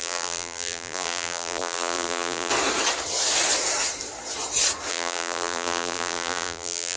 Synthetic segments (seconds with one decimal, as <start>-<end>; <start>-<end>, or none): 0.0-2.5; 4.9-7.0